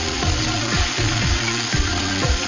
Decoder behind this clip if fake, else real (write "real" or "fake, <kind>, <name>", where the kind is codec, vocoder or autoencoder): fake, vocoder, Vocos